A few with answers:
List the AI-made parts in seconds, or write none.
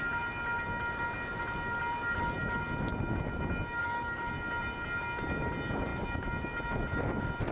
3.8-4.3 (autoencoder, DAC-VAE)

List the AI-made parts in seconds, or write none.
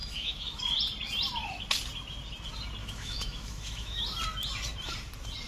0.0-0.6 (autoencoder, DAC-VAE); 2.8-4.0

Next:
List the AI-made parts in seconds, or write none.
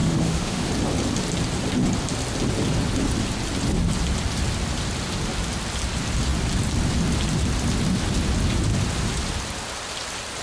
0.0-0.7 (autoencoder, DAC-VAE)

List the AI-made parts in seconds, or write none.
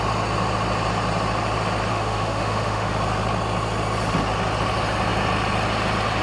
1.9-2.9 (autoencoder, DAC-VAE)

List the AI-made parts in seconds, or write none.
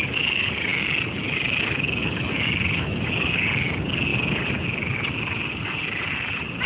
2.0-3.3 (autoencoder, DAC-VAE)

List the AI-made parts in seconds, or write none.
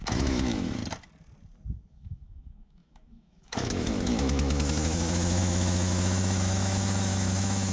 0.0-0.8 (autoencoder, DAC-VAE); 1.9-7.7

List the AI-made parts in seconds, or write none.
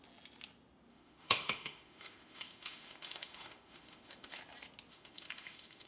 0.9-4.4 (autoencoder, DAC-VAE); 4.9-5.9